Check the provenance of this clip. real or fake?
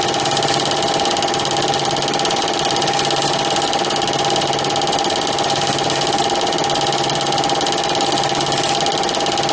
real